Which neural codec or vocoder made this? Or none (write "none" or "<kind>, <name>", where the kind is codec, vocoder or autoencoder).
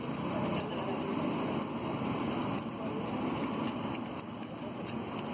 none